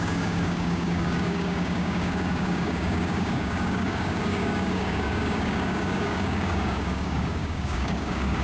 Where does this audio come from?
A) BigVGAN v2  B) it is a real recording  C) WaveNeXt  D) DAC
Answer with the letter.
D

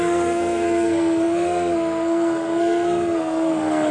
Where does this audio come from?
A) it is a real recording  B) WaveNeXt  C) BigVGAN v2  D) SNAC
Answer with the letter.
D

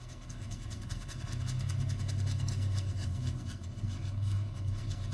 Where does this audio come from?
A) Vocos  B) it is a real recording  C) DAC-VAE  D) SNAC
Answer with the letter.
D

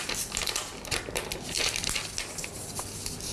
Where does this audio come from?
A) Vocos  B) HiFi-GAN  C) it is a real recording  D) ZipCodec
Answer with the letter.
C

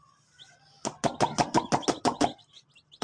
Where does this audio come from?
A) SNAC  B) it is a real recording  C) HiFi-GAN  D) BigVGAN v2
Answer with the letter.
B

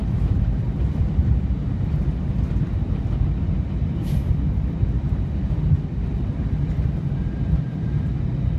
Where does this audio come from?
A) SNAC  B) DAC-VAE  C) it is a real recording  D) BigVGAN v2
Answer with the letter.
C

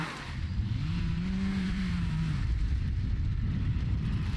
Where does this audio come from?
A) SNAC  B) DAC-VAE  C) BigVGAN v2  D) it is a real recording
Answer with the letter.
C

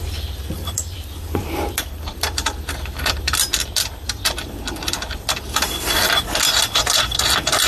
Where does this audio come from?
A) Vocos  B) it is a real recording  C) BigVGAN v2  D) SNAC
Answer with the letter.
C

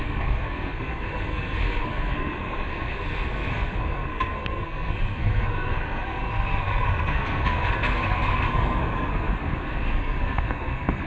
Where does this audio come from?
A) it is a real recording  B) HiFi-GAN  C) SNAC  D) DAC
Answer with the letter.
C